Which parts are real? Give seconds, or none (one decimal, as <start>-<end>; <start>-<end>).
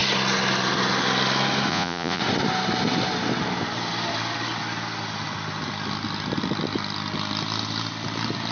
0.0-1.7; 2.2-8.5